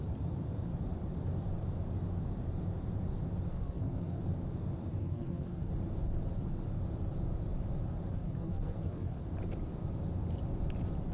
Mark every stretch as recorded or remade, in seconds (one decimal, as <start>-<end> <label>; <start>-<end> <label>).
0.0-3.5 recorded; 3.5-4.2 remade; 4.2-5.0 recorded; 5.0-5.7 remade; 5.7-8.1 recorded; 8.1-9.2 remade; 9.2-11.1 recorded